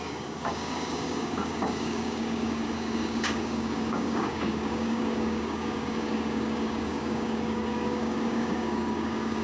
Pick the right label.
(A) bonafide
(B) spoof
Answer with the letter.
B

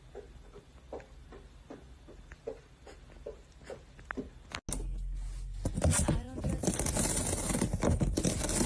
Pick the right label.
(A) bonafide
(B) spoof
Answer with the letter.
A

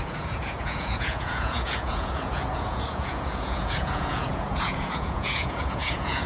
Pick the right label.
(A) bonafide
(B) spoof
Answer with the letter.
B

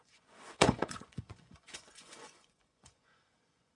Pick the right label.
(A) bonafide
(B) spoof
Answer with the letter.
B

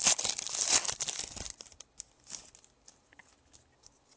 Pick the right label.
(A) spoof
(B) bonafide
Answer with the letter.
B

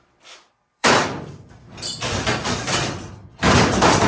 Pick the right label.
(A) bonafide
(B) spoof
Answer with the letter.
B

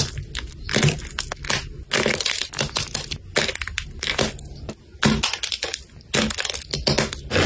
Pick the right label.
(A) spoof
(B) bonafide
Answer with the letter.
B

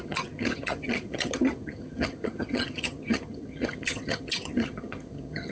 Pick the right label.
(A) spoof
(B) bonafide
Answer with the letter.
A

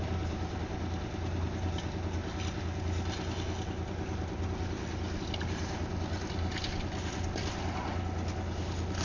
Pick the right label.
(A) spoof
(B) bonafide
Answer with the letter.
B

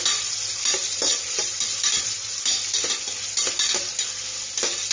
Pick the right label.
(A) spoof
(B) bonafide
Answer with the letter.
B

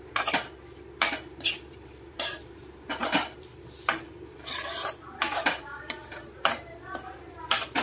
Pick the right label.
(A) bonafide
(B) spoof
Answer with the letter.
B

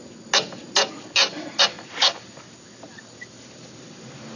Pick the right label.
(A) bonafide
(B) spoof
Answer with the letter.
A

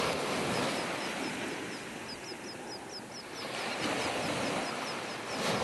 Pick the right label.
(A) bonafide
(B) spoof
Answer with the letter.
A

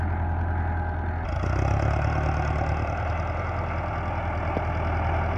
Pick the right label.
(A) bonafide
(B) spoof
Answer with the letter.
A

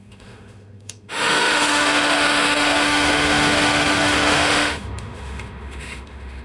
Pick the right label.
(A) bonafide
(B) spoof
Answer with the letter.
B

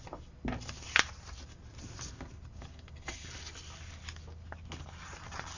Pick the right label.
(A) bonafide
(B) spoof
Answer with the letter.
A